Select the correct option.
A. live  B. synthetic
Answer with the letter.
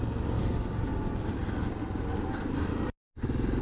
A